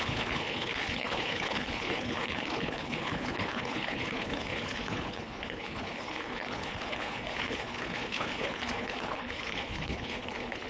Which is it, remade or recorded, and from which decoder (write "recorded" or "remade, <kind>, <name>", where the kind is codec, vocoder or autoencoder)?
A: remade, codec, HILCodec